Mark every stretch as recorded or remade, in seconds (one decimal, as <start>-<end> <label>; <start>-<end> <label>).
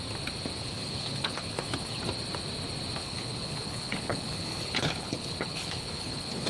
0.0-0.6 recorded; 0.6-2.0 remade; 2.0-3.0 recorded; 3.0-6.5 remade